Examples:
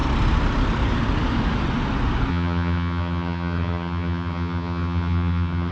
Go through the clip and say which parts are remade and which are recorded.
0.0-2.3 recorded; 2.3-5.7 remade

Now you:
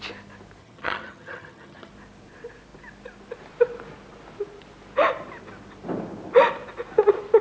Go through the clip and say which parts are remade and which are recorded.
0.0-0.6 recorded; 0.6-1.9 remade; 1.9-7.4 recorded

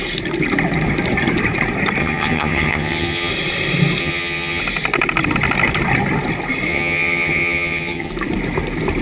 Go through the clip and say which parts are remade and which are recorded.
0.0-2.0 recorded; 2.0-3.3 remade; 3.3-4.0 recorded; 4.0-4.6 remade; 4.6-6.7 recorded; 6.7-8.1 remade; 8.1-9.0 recorded

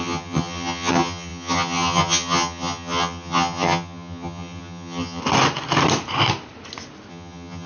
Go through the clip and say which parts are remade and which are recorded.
0.0-5.2 remade; 5.2-7.1 recorded; 7.1-7.7 remade

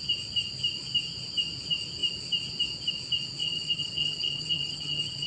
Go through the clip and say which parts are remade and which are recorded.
0.0-3.4 recorded; 3.4-5.3 remade

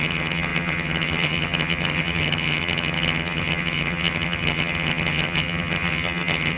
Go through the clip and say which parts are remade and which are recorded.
0.0-6.6 remade

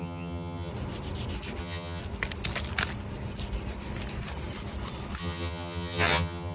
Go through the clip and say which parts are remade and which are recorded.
0.0-0.7 remade; 0.7-1.6 recorded; 1.6-2.0 remade; 2.0-5.2 recorded; 5.2-6.5 remade

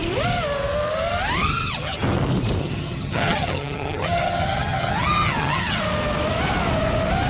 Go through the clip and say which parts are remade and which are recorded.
0.0-1.4 recorded; 1.4-2.0 remade; 2.0-2.6 recorded; 2.6-5.8 remade; 5.8-7.3 recorded